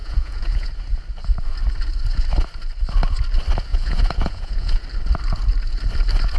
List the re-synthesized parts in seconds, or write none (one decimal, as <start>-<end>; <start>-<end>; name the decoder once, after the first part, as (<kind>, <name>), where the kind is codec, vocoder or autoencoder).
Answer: 0.0-0.7 (vocoder, Vocos); 3.7-4.8